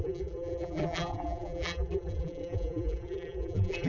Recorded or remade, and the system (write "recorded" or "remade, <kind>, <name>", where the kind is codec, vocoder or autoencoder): remade, vocoder, BigVGAN v2